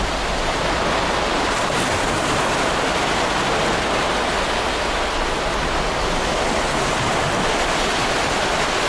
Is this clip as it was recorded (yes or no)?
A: yes